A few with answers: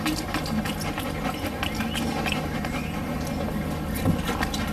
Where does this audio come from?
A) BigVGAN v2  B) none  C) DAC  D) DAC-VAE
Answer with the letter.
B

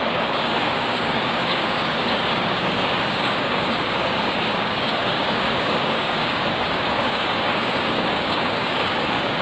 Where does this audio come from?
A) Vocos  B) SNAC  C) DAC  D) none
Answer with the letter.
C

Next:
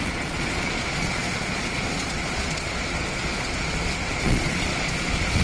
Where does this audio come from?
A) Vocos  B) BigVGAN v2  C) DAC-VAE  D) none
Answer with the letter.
A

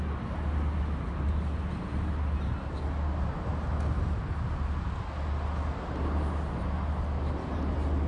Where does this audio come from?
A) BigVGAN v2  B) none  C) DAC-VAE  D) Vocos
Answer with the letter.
B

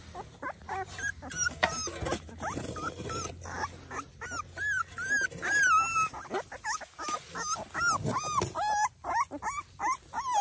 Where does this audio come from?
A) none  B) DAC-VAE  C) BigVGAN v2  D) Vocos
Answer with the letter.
A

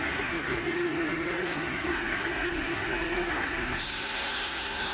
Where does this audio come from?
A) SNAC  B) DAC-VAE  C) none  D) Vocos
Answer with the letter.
A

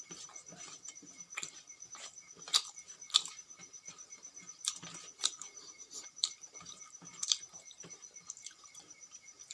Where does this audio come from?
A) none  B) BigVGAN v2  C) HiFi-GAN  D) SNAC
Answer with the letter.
B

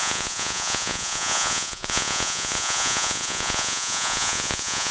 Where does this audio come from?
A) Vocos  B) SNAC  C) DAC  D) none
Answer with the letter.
A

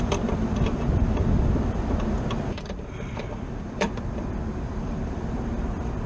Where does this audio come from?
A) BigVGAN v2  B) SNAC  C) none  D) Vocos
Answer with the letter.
A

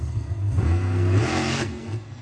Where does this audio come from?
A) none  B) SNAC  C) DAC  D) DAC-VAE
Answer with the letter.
B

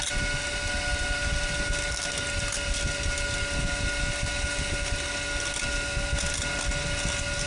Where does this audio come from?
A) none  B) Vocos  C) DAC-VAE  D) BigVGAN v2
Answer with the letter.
A